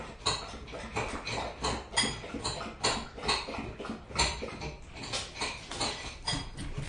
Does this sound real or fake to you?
real